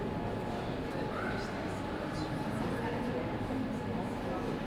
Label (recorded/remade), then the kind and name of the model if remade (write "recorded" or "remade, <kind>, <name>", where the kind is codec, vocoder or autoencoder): recorded